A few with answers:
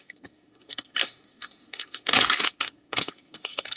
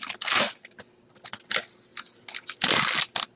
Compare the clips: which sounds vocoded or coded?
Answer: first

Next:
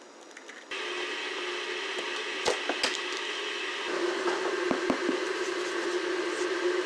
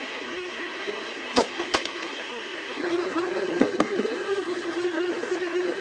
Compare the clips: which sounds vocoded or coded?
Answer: second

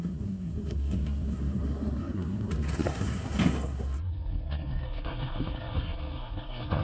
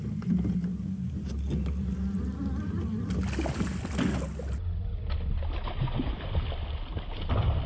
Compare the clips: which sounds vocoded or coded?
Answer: first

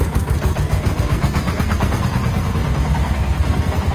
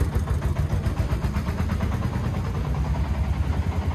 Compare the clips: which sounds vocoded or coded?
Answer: first